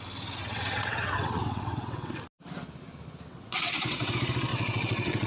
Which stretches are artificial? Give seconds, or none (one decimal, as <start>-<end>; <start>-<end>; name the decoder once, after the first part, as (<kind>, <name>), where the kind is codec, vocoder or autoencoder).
0.4-2.2 (vocoder, WaveNeXt); 3.3-4.1; 4.5-5.3